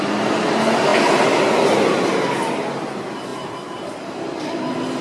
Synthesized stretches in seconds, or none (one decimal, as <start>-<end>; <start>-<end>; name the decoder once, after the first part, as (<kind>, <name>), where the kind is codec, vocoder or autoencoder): 3.3-4.6 (vocoder, BigVGAN v2)